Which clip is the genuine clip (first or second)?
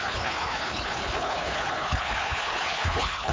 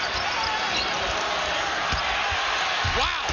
second